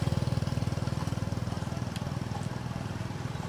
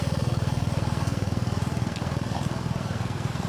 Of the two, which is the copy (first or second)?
second